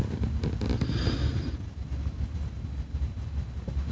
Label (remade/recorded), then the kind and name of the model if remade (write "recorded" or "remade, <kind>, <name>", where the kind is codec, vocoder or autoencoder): recorded